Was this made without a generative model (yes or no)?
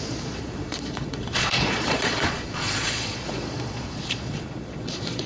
no